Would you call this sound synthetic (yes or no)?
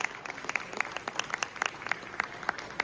no